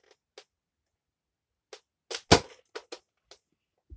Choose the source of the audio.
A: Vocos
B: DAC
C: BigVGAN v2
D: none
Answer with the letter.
D